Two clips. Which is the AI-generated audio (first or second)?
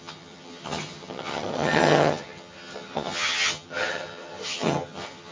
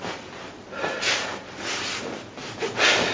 first